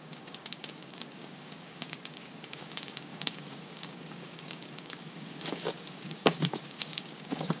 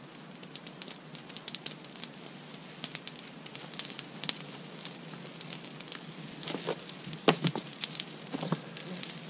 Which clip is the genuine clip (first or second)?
second